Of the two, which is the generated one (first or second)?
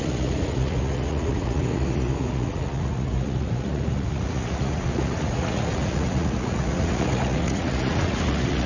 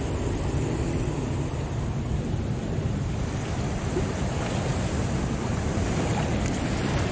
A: first